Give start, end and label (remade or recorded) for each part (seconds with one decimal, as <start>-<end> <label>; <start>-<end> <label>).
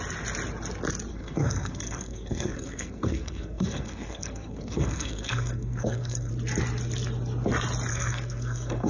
0.0-1.1 recorded; 1.1-6.3 remade; 6.3-7.9 recorded; 7.9-8.9 remade